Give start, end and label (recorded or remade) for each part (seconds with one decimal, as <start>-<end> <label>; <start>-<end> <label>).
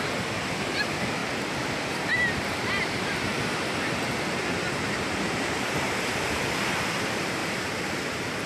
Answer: 0.0-1.2 remade; 1.2-2.9 recorded; 2.9-3.3 remade; 3.3-5.1 recorded; 5.1-8.5 remade